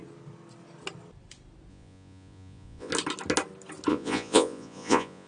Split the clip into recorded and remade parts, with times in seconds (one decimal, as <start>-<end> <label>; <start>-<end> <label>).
0.0-1.7 recorded; 1.7-2.9 remade; 2.9-3.9 recorded; 3.9-5.3 remade